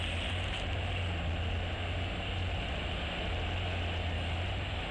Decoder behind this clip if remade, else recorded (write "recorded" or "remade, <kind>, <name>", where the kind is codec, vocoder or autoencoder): recorded